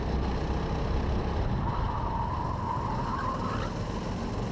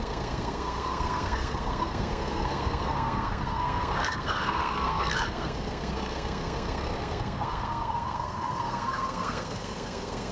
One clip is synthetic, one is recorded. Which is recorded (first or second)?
first